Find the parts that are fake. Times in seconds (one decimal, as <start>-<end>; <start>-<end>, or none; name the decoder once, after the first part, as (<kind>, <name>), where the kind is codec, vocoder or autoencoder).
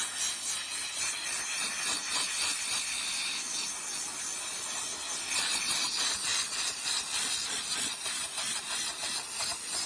6.3-7.9 (vocoder, BigVGAN v2)